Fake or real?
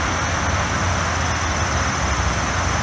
real